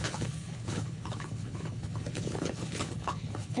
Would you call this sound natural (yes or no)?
no